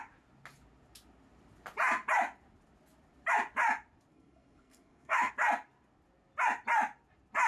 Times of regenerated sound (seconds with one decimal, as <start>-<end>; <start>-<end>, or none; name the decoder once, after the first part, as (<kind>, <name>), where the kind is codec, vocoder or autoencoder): 4.1-5.3 (codec, SNAC)